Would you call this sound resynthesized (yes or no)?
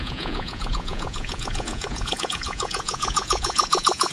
yes